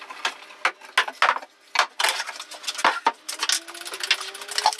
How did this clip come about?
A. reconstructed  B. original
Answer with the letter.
B